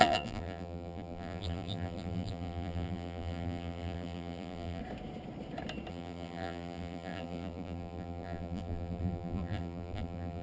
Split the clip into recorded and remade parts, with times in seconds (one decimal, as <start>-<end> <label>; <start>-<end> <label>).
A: 0.0-4.8 remade; 4.8-5.9 recorded; 5.9-10.4 remade